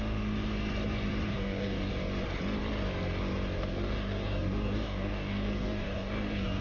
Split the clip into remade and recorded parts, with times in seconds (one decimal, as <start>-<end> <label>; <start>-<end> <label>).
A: 0.0-1.3 recorded; 1.3-1.9 remade; 1.9-3.7 recorded; 3.7-6.6 remade